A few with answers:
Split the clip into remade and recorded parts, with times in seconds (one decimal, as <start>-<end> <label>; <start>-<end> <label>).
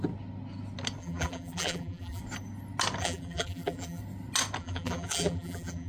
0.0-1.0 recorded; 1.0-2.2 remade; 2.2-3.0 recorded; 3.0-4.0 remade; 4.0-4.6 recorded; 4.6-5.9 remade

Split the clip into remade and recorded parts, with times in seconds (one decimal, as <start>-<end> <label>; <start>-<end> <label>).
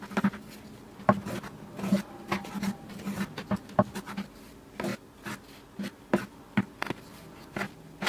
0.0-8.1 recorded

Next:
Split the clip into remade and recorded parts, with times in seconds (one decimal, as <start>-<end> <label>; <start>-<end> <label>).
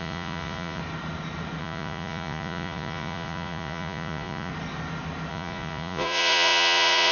0.0-0.8 remade; 0.8-1.6 recorded; 1.6-4.5 remade; 4.5-5.3 recorded; 5.3-7.1 remade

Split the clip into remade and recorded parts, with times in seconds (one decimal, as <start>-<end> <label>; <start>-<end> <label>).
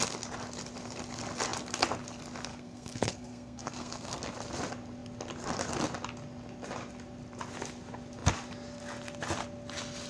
0.0-2.5 recorded; 2.5-4.2 remade; 4.2-10.1 recorded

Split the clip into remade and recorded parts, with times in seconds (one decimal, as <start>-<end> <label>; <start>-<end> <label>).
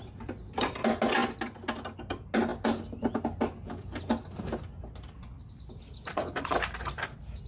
0.0-7.5 recorded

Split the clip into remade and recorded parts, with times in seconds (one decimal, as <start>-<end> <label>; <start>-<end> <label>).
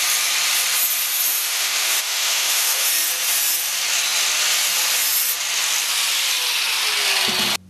0.0-1.3 recorded; 1.3-2.9 remade; 2.9-7.7 recorded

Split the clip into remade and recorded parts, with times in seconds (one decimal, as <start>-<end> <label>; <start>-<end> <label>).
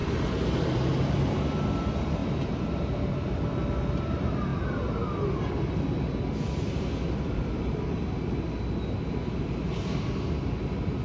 0.0-1.5 remade; 1.5-2.2 recorded; 2.2-3.1 remade; 3.1-11.0 recorded